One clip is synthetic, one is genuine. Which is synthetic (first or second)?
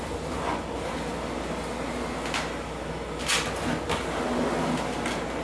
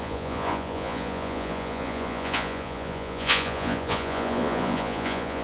second